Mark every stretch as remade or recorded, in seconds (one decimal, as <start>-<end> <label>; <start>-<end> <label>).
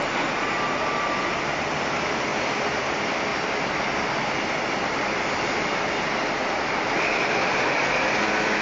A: 0.0-2.3 remade; 2.3-2.8 recorded; 2.8-3.3 remade; 3.3-4.3 recorded; 4.3-8.6 remade